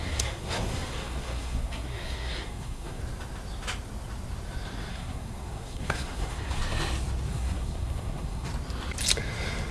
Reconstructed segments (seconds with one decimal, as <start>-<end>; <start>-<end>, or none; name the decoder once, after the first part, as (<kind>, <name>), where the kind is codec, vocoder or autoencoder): 0.0-3.0 (codec, SNAC); 4.9-6.6; 7.3-8.5